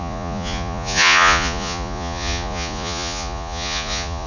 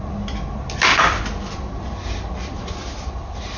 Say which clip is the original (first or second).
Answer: second